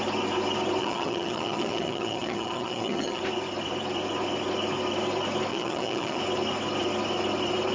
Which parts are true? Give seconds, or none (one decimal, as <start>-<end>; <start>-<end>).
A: 0.0-0.8; 3.2-5.5; 6.2-7.7